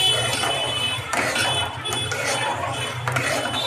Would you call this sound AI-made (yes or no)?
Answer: yes